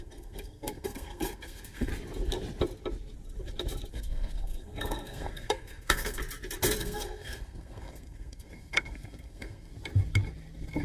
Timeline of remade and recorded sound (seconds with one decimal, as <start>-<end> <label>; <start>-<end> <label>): 0.0-1.9 remade; 1.9-3.9 recorded; 3.9-6.2 remade; 6.2-6.8 recorded; 6.8-9.7 remade; 9.7-10.8 recorded